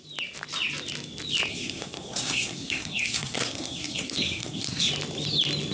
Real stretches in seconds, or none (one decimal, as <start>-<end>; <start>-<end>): 0.0-1.5; 4.9-5.7